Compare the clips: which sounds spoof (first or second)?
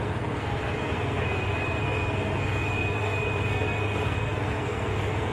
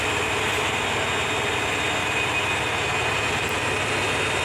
first